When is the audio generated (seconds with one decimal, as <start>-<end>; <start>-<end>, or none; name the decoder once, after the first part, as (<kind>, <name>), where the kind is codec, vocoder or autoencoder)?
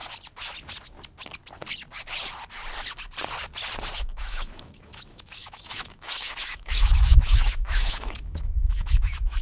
3.9-9.4 (autoencoder, DAC-VAE)